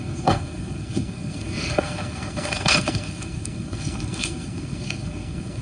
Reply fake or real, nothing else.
fake